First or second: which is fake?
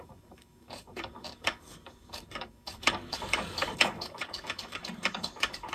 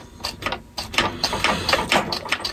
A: first